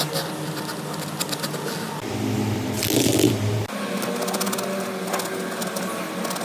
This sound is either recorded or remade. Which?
recorded